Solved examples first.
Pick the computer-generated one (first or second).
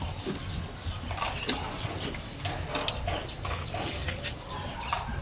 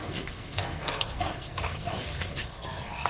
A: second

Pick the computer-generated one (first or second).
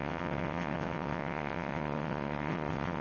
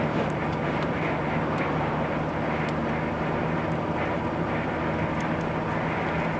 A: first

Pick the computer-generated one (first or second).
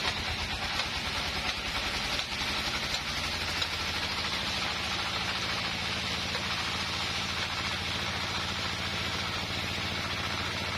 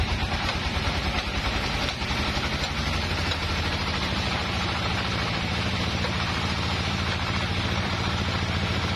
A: second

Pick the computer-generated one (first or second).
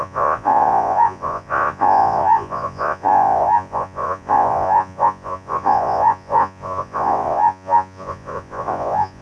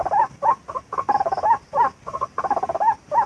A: first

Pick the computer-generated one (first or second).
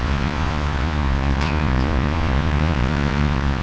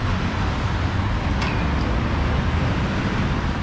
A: first